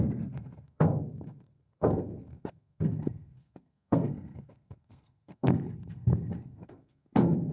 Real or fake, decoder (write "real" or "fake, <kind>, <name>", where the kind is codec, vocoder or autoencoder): fake, codec, SNAC